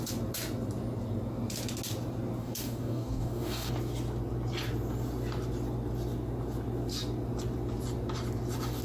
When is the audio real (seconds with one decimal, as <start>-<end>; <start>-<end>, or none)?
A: 0.0-2.4; 3.7-8.8